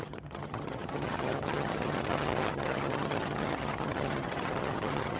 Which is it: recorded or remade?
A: remade